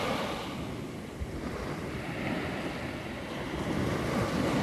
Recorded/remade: recorded